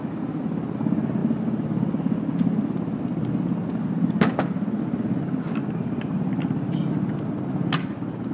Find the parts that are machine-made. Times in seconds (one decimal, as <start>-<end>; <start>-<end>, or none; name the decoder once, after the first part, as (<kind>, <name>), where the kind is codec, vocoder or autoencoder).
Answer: none